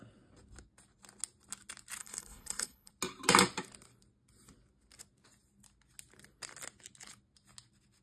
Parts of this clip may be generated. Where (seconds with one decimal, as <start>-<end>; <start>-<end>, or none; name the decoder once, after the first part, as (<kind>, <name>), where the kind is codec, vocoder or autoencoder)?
2.0-2.9 (codec, HILCodec)